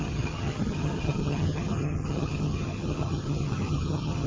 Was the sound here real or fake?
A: fake